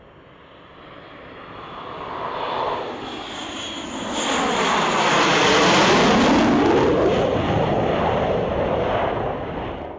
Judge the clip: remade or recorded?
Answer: recorded